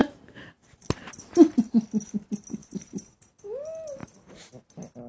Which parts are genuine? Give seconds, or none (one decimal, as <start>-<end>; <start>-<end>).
0.0-2.6; 3.3-5.1